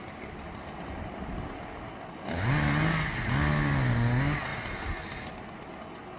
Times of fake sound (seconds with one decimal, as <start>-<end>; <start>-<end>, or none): none